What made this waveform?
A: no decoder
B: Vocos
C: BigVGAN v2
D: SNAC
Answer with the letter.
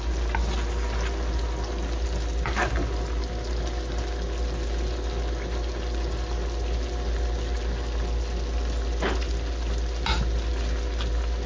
A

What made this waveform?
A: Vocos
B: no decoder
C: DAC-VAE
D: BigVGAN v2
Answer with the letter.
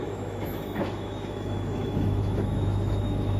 C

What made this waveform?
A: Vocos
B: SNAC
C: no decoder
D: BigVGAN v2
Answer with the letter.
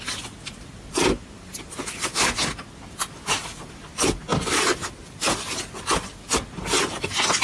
C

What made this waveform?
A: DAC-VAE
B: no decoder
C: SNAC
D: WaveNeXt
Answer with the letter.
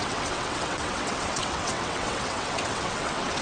D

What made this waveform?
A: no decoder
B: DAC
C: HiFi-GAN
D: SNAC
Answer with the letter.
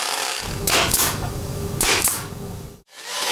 B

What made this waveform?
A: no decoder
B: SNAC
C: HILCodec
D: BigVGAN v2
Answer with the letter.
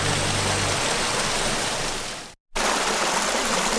A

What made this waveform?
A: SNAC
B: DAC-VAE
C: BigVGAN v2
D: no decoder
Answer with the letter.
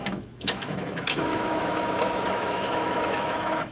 B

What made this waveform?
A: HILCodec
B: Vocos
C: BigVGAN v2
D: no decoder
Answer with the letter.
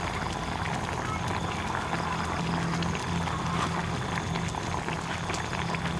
D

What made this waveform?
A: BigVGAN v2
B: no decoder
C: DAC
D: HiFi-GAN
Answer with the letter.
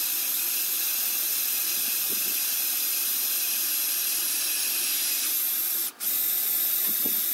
B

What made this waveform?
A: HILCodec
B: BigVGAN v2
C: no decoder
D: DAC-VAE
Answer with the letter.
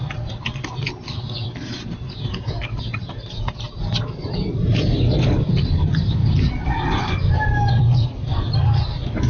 B